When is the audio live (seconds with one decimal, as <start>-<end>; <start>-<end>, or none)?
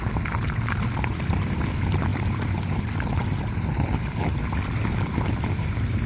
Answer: 0.0-6.1